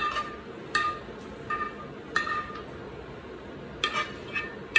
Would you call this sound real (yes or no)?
yes